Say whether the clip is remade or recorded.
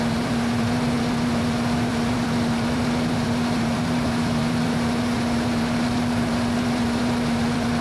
remade